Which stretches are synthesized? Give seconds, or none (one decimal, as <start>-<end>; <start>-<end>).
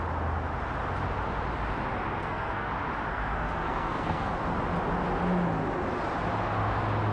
2.2-2.7; 3.1-4.3